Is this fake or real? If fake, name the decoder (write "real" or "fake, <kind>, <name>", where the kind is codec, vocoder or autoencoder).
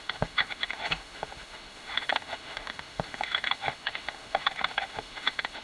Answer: fake, autoencoder, DAC-VAE